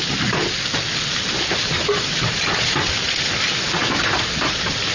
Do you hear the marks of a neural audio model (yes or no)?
no